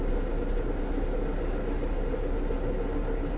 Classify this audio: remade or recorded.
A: recorded